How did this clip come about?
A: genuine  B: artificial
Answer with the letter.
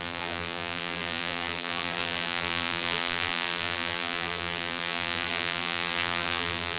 B